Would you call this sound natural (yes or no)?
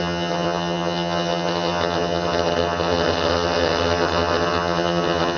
no